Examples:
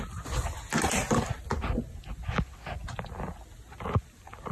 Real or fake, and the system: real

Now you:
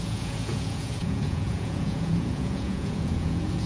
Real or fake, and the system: fake, vocoder, Vocos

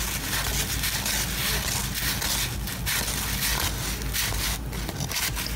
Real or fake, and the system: real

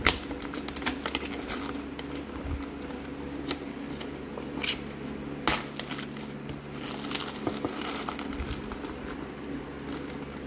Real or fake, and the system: real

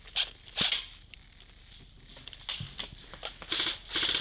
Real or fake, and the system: real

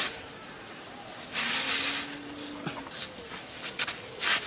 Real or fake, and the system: real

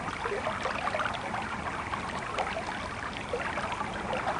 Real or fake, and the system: real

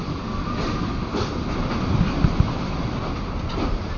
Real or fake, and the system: real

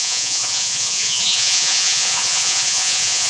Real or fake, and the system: fake, vocoder, Vocos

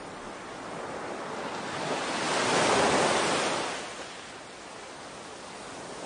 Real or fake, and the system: real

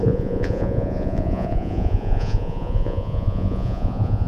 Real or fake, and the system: fake, vocoder, Vocos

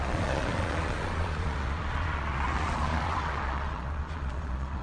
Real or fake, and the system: fake, vocoder, Vocos